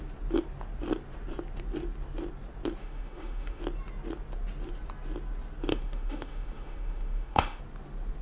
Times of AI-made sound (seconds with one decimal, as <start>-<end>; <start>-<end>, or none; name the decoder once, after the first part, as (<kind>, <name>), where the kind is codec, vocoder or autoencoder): 2.8-3.6 (autoencoder, DAC-VAE); 5.7-7.6